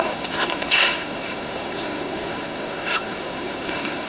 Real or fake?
fake